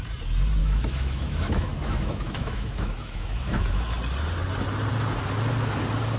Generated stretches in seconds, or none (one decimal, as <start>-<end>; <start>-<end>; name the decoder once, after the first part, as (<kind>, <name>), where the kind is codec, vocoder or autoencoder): 0.6-3.8 (autoencoder, DAC-VAE)